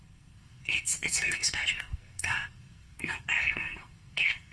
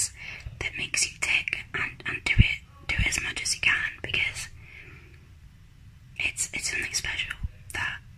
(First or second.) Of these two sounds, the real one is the second